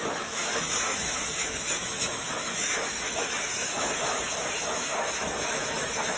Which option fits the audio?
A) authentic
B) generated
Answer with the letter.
B